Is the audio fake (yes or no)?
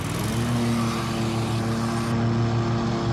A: no